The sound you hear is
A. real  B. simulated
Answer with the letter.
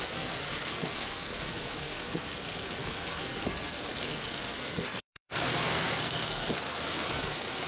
B